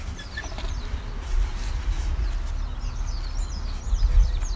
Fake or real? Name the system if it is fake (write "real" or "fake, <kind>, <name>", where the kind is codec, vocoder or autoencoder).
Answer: real